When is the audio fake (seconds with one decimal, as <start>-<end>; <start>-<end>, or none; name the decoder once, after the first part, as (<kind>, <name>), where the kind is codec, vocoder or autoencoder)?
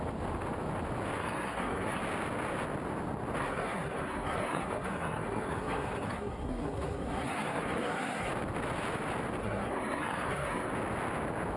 1.2-2.0 (codec, SNAC); 3.4-8.3; 9.4-10.7